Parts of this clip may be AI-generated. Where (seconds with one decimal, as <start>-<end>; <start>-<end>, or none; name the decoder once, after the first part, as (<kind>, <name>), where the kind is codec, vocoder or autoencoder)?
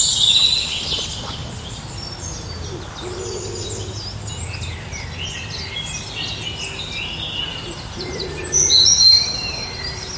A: 7.5-10.2 (vocoder, BigVGAN v2)